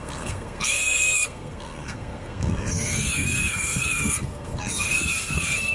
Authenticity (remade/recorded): remade